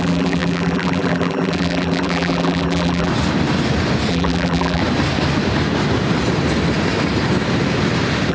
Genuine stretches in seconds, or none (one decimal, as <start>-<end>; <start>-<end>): 3.1-4.1; 4.8-8.3